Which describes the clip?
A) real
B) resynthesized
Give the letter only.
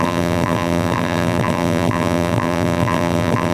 B